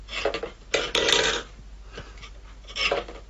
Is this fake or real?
real